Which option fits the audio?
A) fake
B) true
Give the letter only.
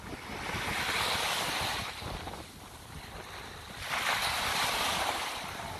B